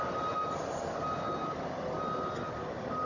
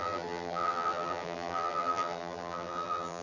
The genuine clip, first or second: first